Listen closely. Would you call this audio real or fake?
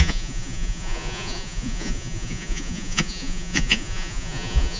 fake